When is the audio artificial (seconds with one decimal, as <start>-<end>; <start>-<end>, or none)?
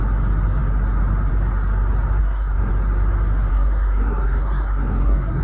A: 2.2-2.7; 3.5-5.4